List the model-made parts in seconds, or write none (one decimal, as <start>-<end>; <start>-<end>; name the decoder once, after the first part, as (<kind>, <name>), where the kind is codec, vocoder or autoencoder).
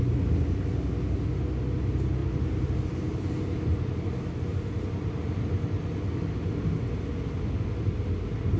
2.2-2.9 (vocoder, BigVGAN v2)